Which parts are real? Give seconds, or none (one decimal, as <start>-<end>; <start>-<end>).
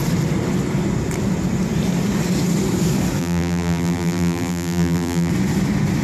0.0-3.2; 5.3-6.0